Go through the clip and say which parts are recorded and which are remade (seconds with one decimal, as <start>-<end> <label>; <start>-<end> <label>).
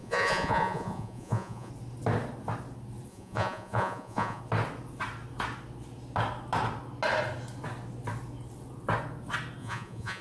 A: 0.0-1.7 remade; 1.7-3.1 recorded; 3.1-4.4 remade; 4.4-9.6 recorded; 9.6-10.2 remade